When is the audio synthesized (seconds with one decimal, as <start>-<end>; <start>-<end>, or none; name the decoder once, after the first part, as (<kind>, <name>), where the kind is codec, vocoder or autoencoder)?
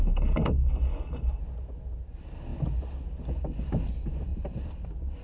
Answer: 0.0-1.4 (codec, DAC)